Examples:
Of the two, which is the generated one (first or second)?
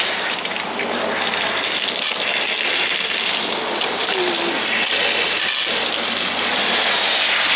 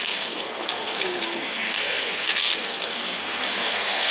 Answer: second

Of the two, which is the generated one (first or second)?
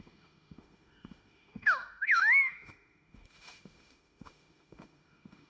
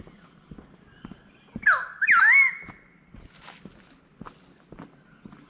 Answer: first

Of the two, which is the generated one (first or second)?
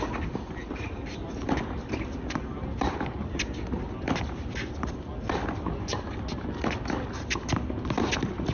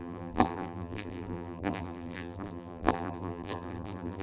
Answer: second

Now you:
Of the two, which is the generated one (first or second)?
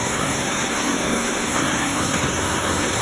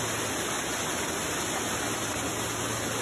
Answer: first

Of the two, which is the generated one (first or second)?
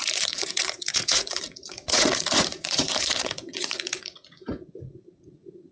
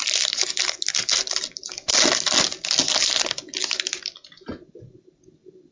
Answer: first